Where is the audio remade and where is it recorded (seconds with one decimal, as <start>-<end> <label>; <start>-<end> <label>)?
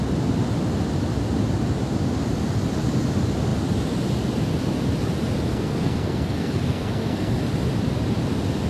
0.0-5.5 recorded; 5.5-7.4 remade; 7.4-8.7 recorded